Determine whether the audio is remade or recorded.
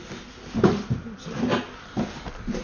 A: recorded